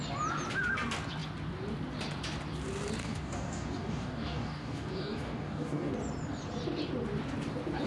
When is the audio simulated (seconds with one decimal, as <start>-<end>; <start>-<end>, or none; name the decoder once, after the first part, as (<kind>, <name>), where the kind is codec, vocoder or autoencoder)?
3.0-5.9 (codec, DAC)